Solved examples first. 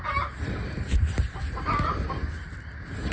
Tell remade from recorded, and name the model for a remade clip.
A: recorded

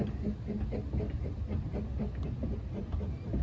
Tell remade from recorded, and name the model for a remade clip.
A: recorded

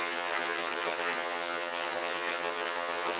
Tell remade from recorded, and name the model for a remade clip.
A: remade, vocoder, HiFi-GAN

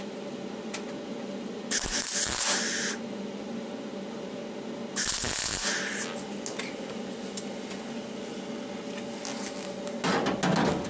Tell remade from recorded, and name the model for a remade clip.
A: recorded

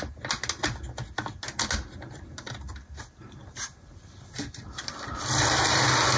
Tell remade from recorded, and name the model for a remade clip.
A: recorded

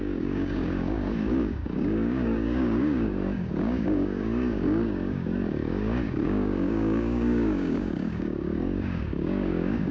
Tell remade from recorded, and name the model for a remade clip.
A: remade, codec, DAC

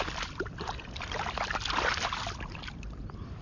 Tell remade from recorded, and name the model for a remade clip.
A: recorded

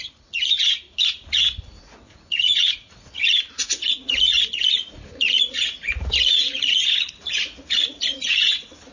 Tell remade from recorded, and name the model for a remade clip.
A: remade, vocoder, Vocos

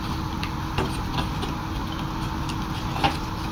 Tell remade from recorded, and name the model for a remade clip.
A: recorded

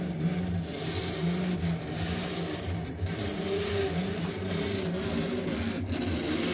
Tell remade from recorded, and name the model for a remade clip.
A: recorded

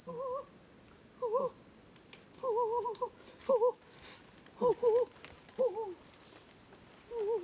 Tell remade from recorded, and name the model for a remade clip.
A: recorded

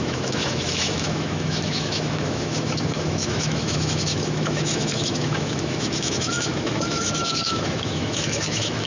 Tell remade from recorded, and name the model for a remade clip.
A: remade, autoencoder, DAC-VAE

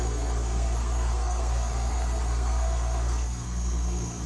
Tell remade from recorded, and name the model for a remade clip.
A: remade, codec, SNAC